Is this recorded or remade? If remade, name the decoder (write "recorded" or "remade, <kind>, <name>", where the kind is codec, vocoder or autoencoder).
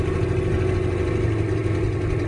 recorded